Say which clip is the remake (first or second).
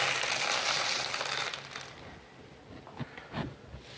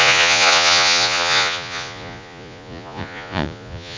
second